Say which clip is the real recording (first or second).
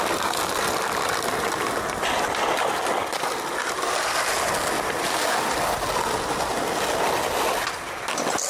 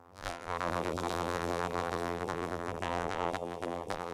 first